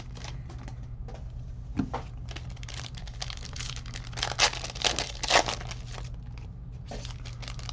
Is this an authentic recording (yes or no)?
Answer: yes